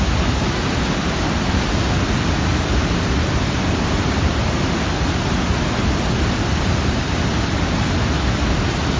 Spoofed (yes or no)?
no